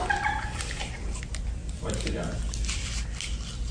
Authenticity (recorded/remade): recorded